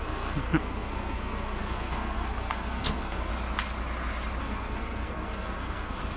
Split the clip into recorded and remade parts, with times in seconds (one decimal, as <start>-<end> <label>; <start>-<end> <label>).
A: 0.0-3.3 remade; 3.3-4.4 recorded; 4.4-6.2 remade